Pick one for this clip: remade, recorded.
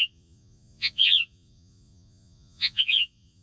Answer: remade